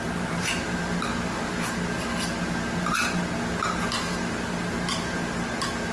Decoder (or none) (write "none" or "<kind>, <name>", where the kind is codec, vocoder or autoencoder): none